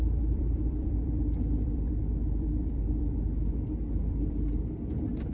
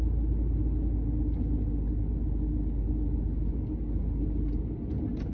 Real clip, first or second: second